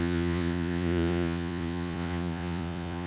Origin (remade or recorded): remade